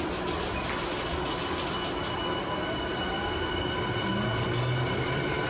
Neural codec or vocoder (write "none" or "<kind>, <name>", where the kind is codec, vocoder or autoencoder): none